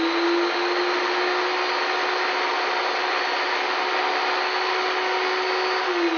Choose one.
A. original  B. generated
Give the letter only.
A